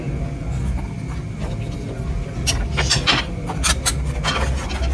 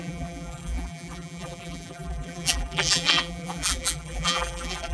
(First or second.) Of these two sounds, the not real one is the second